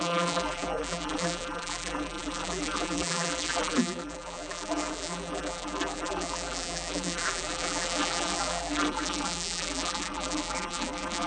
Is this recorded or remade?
remade